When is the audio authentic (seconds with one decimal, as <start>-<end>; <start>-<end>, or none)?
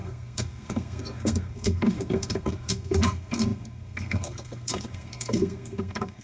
none